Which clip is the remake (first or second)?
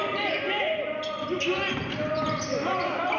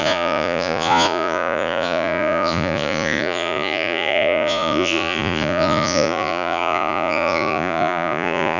second